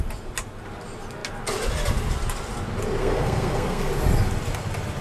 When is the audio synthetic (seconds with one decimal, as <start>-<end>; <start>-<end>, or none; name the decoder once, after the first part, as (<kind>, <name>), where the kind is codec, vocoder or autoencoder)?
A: 3.0-3.9 (codec, SNAC)